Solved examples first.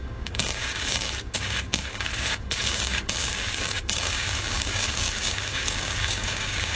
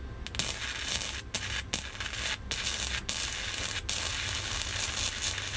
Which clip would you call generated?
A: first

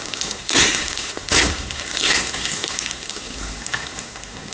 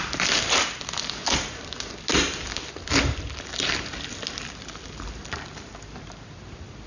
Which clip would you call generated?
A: first